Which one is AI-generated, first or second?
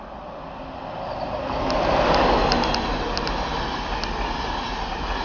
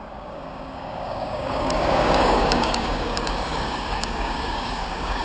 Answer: second